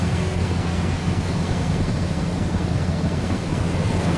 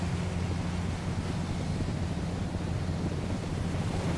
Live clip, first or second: second